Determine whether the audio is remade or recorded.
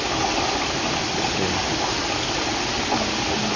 recorded